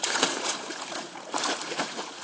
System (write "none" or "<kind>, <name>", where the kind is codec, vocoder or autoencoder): vocoder, Vocos